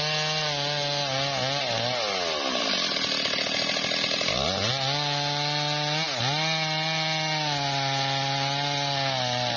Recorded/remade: recorded